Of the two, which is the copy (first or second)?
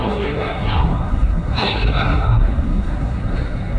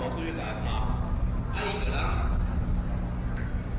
first